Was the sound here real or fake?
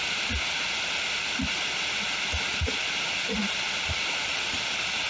real